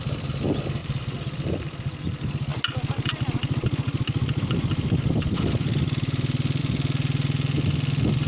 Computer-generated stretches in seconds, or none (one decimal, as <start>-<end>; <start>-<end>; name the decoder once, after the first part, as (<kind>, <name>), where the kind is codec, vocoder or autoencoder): 0.8-2.0 (vocoder, BigVGAN v2)